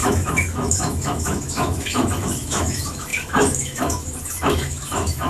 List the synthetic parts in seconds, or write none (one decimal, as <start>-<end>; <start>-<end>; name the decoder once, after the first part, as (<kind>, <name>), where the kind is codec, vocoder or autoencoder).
0.0-5.3 (autoencoder, DAC-VAE)